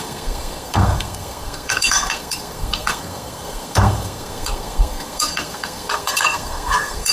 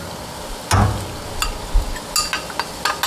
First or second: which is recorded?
second